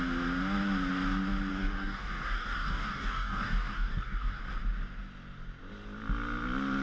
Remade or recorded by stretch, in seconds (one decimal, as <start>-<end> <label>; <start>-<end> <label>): 0.0-1.5 recorded; 1.5-4.4 remade; 4.4-6.8 recorded